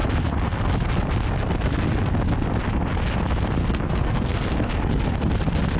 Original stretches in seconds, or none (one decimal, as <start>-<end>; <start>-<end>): 0.0-3.6; 4.7-5.8